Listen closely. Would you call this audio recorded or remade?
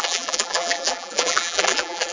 remade